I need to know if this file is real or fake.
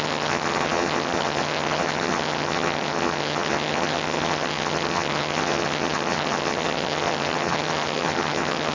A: fake